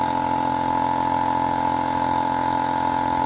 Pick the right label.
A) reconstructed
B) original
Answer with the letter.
B